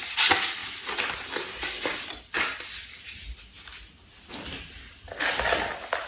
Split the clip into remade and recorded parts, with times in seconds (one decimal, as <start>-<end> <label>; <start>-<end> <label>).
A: 0.0-0.6 remade; 0.6-4.3 recorded; 4.3-6.1 remade